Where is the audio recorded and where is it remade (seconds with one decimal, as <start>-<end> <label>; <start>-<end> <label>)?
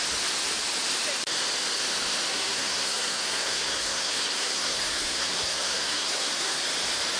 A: 0.0-2.3 recorded; 2.3-6.6 remade; 6.6-7.2 recorded